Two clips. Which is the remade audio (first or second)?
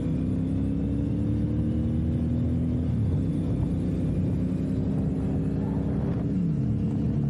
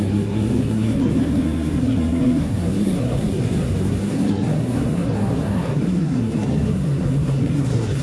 second